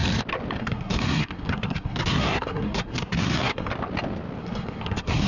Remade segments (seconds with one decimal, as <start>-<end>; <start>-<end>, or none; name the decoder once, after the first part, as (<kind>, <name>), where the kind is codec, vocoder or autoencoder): 0.6-3.7 (codec, SNAC); 4.4-5.3